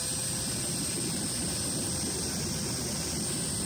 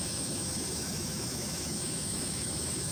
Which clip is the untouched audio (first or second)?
first